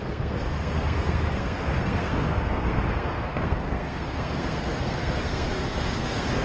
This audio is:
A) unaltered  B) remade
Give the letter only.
B